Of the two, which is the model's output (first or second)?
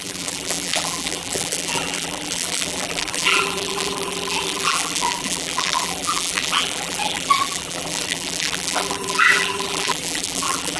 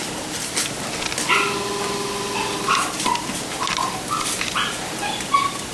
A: first